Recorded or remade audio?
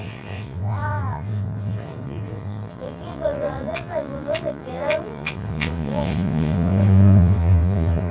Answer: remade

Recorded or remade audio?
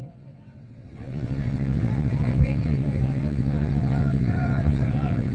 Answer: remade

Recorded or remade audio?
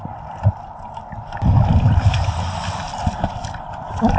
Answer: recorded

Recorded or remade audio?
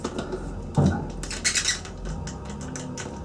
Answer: recorded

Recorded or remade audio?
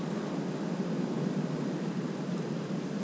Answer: recorded